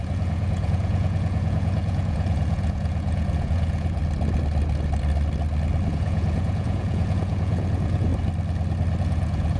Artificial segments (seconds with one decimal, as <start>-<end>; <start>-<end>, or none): 0.0-4.0; 5.9-8.1; 9.0-9.6